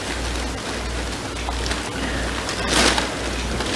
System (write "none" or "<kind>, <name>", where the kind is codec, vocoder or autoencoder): none